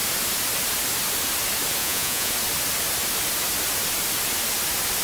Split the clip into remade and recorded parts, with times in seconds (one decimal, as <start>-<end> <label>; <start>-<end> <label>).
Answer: 0.0-1.8 recorded; 1.8-2.3 remade; 2.3-5.0 recorded

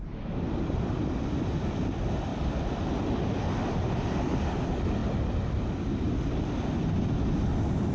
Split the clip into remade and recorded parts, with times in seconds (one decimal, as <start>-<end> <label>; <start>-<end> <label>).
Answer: 0.0-7.9 recorded

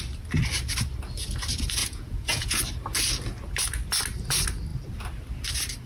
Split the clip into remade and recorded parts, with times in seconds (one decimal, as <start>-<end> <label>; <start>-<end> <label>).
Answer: 0.0-1.8 recorded; 1.8-2.6 remade; 2.6-5.9 recorded

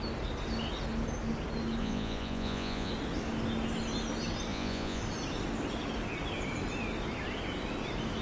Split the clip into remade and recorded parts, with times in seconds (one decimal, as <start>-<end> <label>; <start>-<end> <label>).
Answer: 0.0-1.8 recorded; 1.8-2.9 remade; 2.9-4.5 recorded; 4.5-5.0 remade; 5.0-8.2 recorded

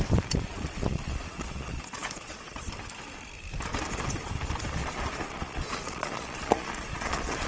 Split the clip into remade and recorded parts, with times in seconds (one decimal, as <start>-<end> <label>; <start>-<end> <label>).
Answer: 0.0-0.5 recorded; 0.5-2.7 remade; 2.7-4.8 recorded; 4.8-7.5 remade